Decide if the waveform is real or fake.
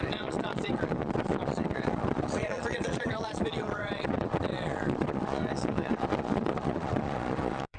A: fake